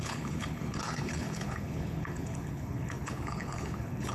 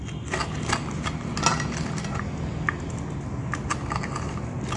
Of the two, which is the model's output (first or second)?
first